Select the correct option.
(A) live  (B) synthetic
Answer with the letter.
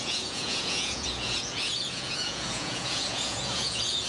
B